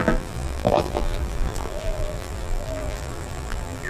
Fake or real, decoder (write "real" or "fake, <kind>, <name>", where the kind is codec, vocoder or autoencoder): fake, vocoder, BigVGAN v2